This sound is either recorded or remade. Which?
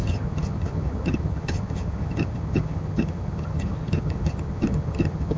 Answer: remade